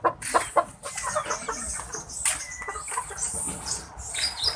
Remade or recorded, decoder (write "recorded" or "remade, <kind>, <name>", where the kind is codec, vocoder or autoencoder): recorded